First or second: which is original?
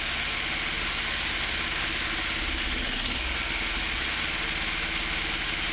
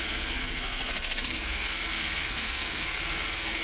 first